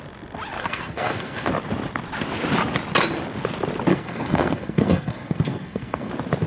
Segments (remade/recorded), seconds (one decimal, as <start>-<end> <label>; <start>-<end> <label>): 0.0-0.6 recorded; 0.6-1.5 remade; 1.5-3.9 recorded; 3.9-6.1 remade; 6.1-6.5 recorded